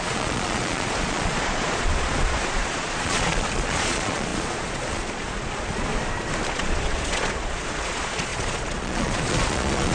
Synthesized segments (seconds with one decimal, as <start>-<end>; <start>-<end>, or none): 0.0-5.9; 6.5-9.9